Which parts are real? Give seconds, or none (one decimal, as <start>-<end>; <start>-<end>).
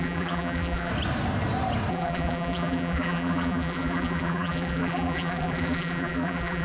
0.9-1.9